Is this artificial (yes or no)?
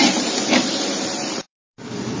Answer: yes